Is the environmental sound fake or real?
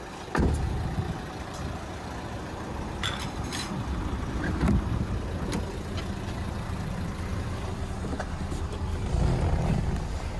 fake